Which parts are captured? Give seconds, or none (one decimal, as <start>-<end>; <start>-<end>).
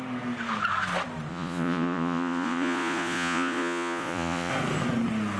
0.0-1.3; 4.5-5.4